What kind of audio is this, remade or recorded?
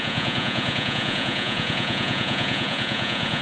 remade